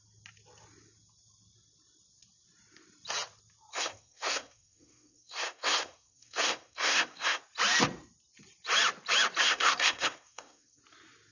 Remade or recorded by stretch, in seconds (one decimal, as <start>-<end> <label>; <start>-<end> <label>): 0.0-3.7 recorded; 3.7-7.4 remade; 7.4-9.4 recorded; 9.4-10.8 remade; 10.8-11.3 recorded